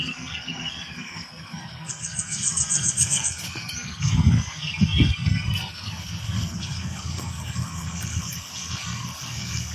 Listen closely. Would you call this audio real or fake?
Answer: fake